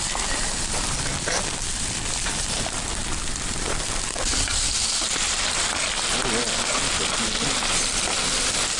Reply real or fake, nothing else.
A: real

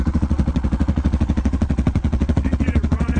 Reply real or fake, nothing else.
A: fake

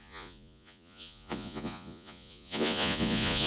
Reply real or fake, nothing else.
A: fake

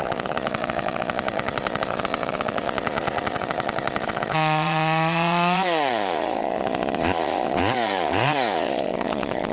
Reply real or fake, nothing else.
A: fake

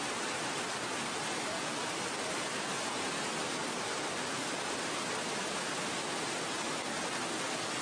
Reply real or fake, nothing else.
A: real